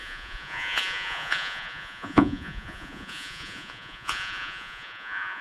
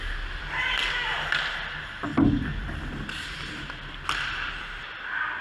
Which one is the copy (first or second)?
first